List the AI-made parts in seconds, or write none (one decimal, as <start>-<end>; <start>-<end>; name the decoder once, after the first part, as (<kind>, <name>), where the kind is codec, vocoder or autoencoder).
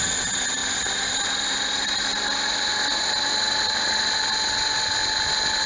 none